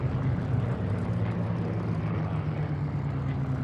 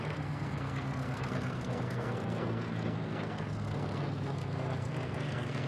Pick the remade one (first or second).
second